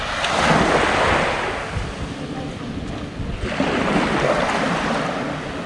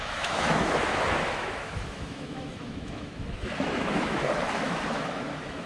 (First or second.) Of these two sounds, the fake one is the second